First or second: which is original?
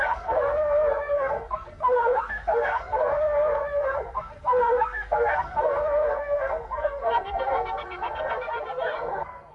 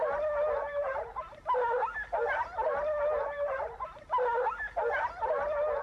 second